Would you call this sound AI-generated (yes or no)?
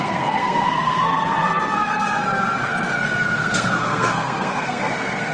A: yes